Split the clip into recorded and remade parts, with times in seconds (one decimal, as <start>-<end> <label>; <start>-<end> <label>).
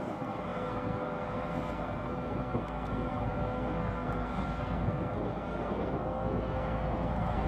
0.0-7.5 remade